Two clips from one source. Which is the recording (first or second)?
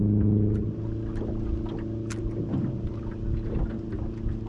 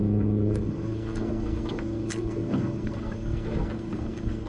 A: first